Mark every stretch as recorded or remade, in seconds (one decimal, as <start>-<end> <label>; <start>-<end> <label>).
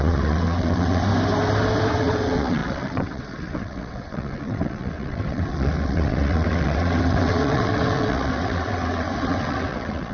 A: 0.0-1.1 remade; 1.1-1.9 recorded; 1.9-10.1 remade